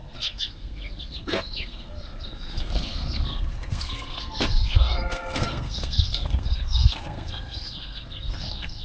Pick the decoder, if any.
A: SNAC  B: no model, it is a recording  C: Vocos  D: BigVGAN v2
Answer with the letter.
A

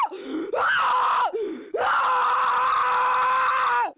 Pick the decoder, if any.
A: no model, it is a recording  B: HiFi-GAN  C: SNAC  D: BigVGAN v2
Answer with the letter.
A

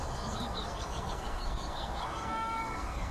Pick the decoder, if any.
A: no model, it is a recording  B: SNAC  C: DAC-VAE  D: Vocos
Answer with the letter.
B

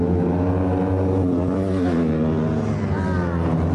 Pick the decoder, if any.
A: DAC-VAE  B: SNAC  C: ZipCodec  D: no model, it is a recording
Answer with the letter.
D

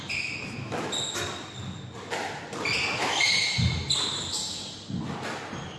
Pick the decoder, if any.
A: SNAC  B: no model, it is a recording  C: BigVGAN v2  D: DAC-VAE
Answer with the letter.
B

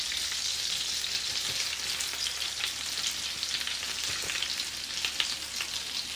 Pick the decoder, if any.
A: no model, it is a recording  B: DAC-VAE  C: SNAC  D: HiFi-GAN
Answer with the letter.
A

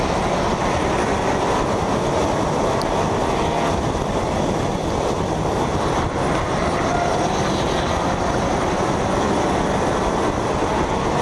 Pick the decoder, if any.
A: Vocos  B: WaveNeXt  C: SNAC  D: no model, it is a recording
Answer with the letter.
D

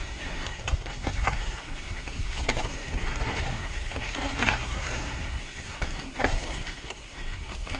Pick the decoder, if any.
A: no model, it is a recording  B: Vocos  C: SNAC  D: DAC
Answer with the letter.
C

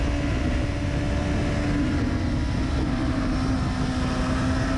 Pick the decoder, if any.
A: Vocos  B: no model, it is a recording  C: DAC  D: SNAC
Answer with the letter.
B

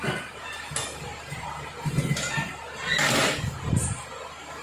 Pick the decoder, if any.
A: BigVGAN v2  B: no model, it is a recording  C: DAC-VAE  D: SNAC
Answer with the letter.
B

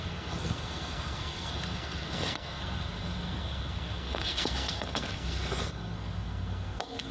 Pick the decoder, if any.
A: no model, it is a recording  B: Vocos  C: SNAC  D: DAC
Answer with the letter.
C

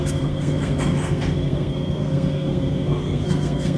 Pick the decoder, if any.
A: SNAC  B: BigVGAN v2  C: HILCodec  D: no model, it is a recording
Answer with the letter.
A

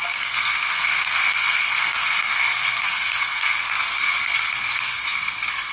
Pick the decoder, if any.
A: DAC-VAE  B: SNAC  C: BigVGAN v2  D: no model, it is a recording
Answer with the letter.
B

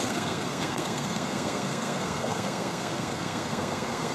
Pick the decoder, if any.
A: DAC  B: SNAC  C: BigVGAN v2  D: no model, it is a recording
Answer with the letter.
B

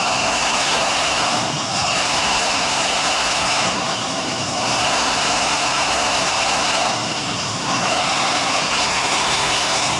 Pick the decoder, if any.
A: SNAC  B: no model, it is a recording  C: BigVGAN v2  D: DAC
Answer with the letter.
A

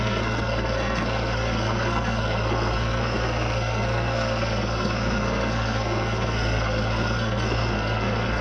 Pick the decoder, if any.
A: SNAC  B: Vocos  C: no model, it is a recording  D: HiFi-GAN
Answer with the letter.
A